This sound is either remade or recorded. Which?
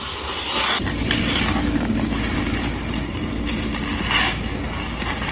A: recorded